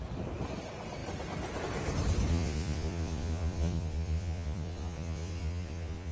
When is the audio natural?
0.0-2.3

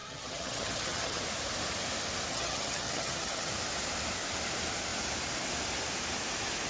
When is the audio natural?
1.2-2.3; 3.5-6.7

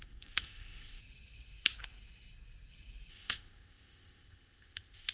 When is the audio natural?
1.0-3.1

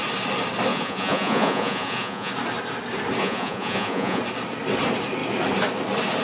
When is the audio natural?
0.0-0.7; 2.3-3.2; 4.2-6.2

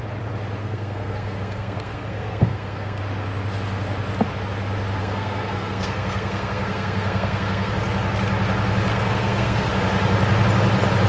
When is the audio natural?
0.0-0.6; 3.0-5.0; 7.7-8.9; 9.7-11.1

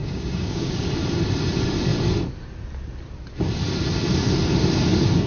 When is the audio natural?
0.9-5.3